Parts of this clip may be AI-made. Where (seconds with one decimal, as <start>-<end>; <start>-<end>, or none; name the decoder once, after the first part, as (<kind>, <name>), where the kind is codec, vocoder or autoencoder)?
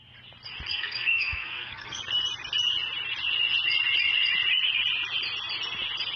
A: 0.7-2.0 (codec, SNAC)